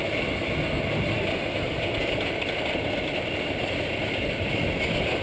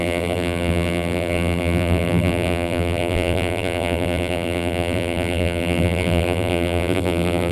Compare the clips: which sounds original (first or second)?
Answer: first